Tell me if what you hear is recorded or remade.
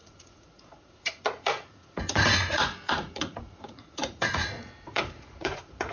remade